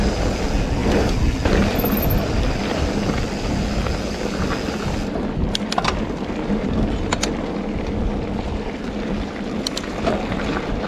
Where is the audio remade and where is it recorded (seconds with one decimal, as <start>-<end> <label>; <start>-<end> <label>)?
0.0-10.9 recorded